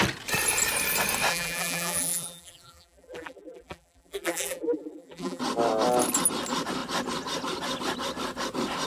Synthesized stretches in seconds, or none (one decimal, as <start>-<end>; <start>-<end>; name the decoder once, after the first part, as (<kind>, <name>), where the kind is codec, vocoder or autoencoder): 1.3-5.4 (vocoder, BigVGAN v2)